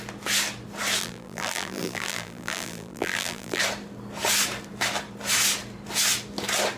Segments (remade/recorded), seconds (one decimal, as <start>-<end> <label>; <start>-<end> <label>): 0.0-1.0 recorded; 1.0-3.6 remade; 3.6-6.8 recorded

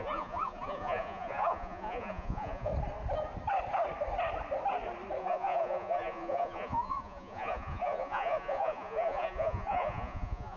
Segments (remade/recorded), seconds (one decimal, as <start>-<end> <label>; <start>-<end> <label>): 0.0-2.7 remade; 2.7-5.2 recorded; 5.2-10.6 remade

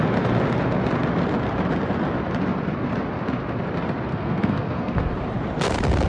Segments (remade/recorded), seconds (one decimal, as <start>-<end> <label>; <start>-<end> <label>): 0.0-4.1 recorded; 4.1-5.1 remade; 5.1-6.1 recorded

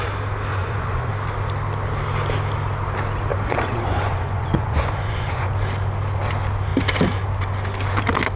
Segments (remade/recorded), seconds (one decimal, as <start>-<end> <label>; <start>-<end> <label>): 0.0-0.5 recorded; 0.5-1.1 remade; 1.1-3.3 recorded; 3.3-5.5 remade; 5.5-8.4 recorded